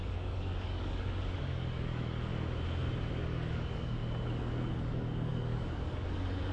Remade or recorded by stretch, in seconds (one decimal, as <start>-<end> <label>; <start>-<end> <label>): 0.0-2.3 remade; 2.3-3.1 recorded; 3.1-4.0 remade; 4.0-4.7 recorded; 4.7-6.5 remade